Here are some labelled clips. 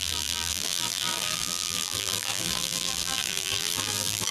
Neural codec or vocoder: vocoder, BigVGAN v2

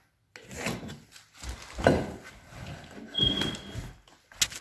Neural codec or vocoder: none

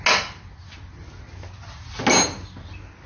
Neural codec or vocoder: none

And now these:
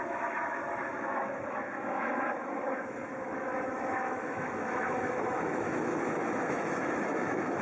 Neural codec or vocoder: autoencoder, DAC-VAE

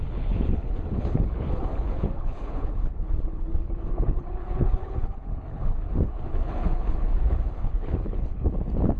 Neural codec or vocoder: codec, HILCodec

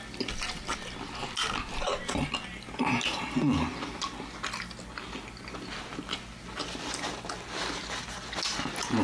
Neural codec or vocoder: none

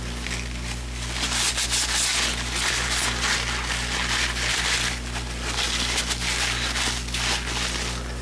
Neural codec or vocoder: none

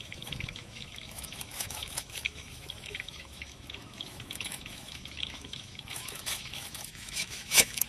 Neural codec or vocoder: autoencoder, DAC-VAE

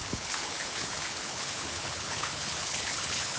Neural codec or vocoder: codec, HILCodec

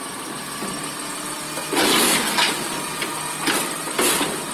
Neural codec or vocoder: none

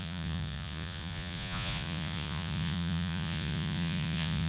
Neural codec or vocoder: vocoder, Vocos